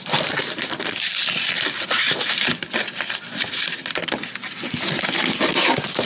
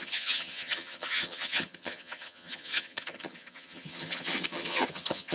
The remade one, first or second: second